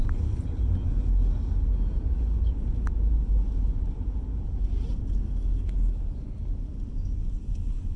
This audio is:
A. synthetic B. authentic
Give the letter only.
B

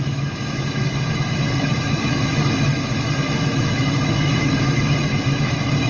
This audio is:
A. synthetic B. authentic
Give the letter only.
A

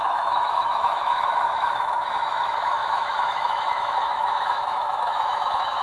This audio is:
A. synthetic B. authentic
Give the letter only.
A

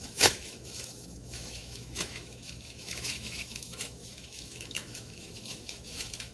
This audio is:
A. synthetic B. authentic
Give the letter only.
A